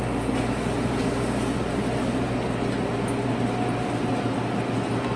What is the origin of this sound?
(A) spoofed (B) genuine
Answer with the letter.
B